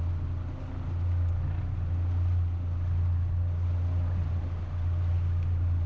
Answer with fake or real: real